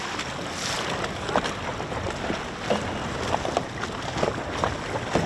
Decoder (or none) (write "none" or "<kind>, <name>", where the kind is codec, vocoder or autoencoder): none